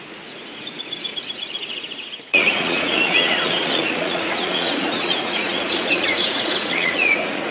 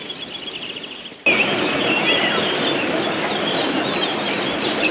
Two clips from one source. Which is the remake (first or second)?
first